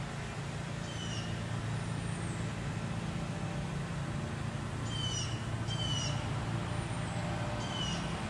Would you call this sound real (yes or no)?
yes